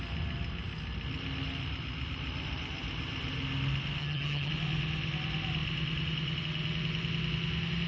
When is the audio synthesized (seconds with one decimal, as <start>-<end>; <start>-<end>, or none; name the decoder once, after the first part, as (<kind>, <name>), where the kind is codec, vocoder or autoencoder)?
4.0-4.5 (vocoder, HiFi-GAN)